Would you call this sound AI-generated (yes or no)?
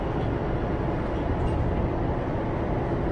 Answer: no